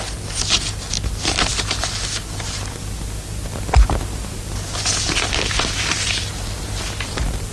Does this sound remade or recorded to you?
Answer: recorded